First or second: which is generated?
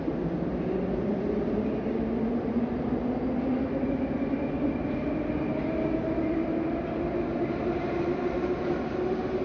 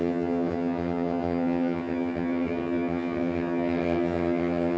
second